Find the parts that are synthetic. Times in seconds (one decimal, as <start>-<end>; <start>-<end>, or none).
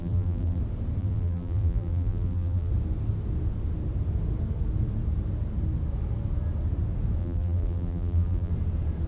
0.0-0.6; 1.0-2.7; 7.2-8.5